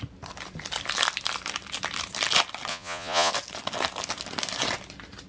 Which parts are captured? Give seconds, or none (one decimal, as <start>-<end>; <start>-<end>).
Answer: 0.0-2.7; 3.3-5.3